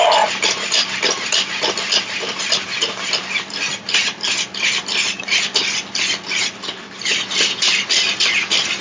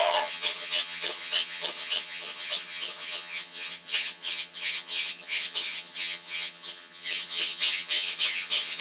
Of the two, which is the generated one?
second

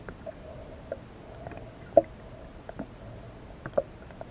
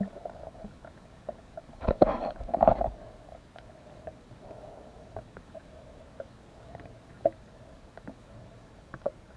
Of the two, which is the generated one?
second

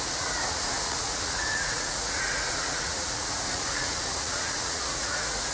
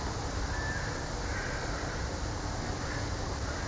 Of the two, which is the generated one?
first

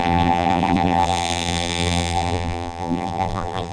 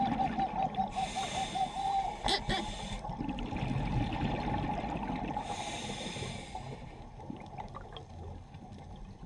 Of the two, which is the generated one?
first